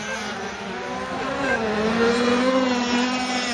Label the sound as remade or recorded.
recorded